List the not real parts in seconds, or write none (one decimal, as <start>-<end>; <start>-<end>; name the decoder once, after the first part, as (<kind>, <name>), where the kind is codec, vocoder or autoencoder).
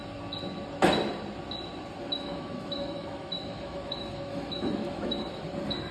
2.0-5.5 (autoencoder, DAC-VAE)